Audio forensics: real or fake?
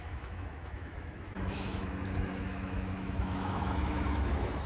fake